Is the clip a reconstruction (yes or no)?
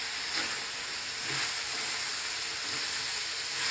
no